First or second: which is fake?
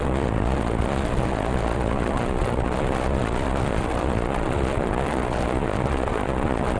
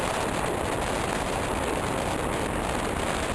first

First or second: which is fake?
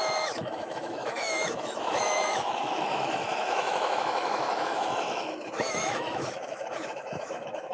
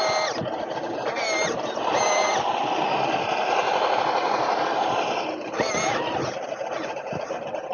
first